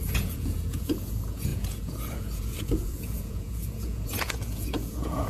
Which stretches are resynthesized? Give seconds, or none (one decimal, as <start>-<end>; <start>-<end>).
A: 0.0-5.3